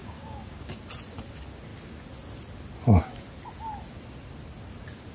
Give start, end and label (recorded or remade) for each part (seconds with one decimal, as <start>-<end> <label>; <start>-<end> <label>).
0.0-0.8 remade; 0.8-5.1 recorded